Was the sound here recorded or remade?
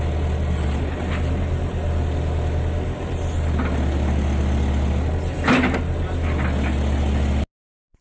recorded